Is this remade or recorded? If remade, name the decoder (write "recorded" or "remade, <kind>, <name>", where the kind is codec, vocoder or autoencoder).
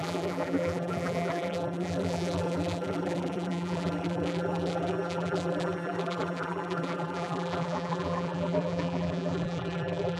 remade, vocoder, BigVGAN v2